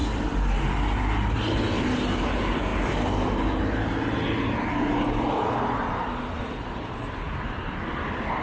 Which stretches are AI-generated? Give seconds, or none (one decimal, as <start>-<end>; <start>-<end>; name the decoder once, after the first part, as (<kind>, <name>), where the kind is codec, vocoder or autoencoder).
1.7-2.7 (vocoder, BigVGAN v2); 6.2-8.4